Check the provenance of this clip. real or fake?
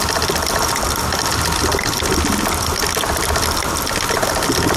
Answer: real